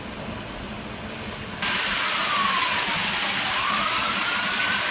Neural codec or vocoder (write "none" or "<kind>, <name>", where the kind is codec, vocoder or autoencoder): none